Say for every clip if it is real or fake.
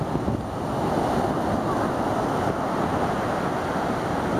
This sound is real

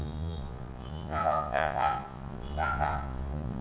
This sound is fake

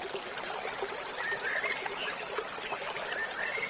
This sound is real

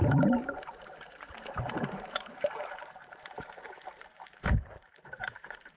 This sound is fake